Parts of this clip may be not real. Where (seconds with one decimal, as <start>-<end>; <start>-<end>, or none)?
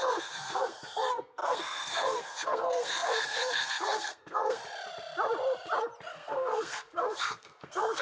0.0-4.6; 6.1-8.0